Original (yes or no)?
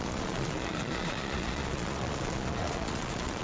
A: no